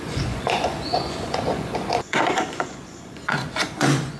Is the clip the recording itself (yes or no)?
no